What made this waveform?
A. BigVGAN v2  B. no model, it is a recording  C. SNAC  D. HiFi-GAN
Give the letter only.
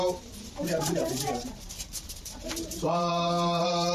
A